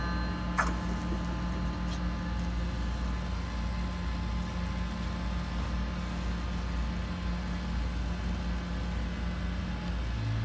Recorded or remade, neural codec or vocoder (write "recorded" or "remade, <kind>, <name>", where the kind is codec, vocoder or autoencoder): recorded